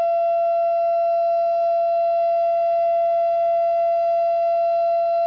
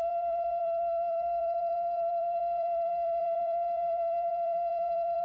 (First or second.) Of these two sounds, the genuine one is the first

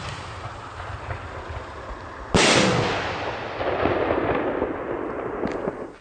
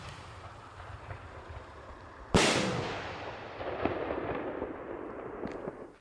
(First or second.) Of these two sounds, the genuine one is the first